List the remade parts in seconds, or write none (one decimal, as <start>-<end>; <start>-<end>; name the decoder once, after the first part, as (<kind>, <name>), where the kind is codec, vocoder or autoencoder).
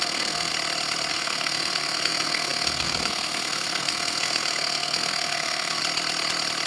0.0-0.5 (codec, SNAC); 1.1-5.8